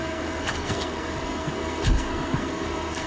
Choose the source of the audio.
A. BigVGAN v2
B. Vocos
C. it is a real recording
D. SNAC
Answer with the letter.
D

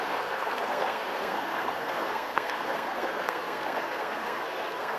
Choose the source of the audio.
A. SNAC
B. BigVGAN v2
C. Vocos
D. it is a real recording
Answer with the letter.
A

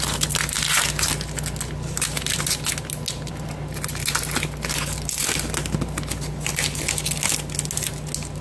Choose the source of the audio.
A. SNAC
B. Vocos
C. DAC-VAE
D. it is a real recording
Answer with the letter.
D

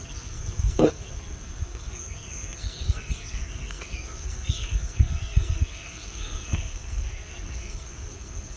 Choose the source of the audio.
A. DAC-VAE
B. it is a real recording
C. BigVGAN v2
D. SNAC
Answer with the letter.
D